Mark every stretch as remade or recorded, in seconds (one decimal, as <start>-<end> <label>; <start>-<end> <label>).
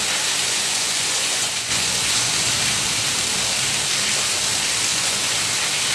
0.0-0.4 recorded; 0.4-2.5 remade; 2.5-4.9 recorded; 4.9-5.4 remade; 5.4-5.9 recorded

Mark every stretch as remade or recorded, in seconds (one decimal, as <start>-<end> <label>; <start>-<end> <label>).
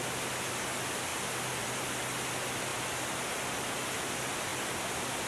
0.0-5.3 recorded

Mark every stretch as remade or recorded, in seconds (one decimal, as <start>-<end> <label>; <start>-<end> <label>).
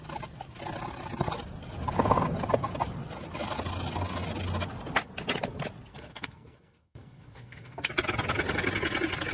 0.0-5.9 recorded; 5.9-7.9 remade; 7.9-9.3 recorded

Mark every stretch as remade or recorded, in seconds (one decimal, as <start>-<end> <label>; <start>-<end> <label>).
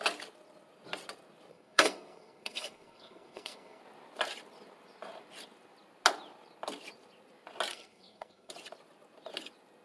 0.0-1.5 recorded; 1.5-3.8 remade; 3.8-7.7 recorded; 7.7-8.5 remade; 8.5-9.8 recorded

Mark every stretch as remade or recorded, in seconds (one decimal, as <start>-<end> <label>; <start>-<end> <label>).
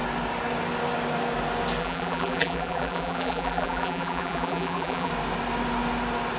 0.0-1.8 recorded; 1.8-5.1 remade; 5.1-6.4 recorded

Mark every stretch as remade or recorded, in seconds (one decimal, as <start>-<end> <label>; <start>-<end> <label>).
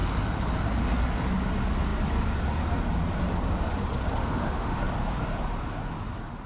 0.0-4.2 recorded; 4.2-4.8 remade; 4.8-6.5 recorded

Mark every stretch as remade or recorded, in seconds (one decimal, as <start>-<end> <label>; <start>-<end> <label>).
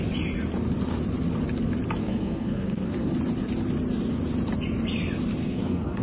0.0-2.0 recorded; 2.0-3.1 remade; 3.1-5.4 recorded; 5.4-6.0 remade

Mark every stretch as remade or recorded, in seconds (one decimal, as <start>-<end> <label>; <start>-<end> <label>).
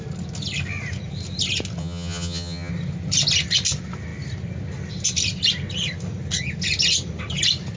0.0-1.8 recorded; 1.8-2.7 remade; 2.7-7.8 recorded